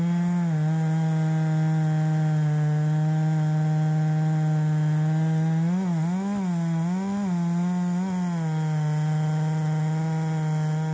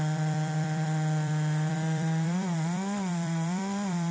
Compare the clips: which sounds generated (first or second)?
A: second